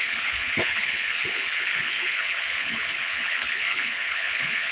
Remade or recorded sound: remade